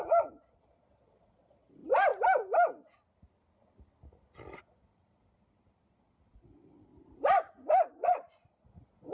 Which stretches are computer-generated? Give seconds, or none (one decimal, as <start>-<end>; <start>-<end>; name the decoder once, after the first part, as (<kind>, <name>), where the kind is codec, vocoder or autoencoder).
0.0-1.8 (vocoder, Vocos); 4.6-6.9; 7.9-9.1